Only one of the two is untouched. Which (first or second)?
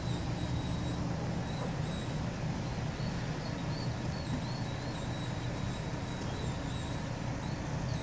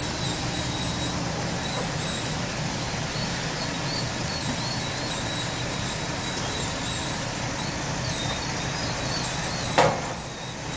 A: first